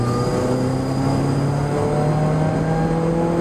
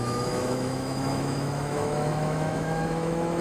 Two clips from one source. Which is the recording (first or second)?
first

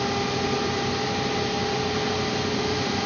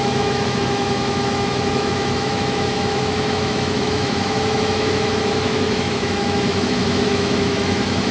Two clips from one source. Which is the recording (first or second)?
first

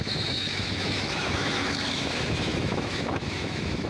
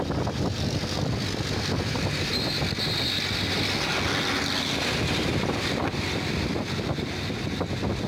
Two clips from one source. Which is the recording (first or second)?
second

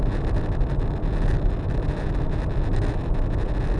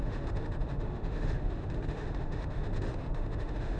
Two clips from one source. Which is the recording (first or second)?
first